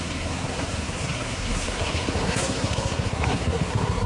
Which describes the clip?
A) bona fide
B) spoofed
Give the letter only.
B